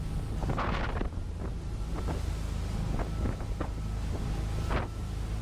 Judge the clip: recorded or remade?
recorded